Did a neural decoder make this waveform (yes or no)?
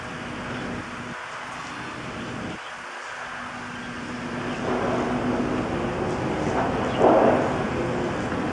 no